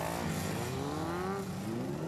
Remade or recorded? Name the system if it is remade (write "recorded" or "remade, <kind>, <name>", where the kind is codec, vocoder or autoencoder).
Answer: recorded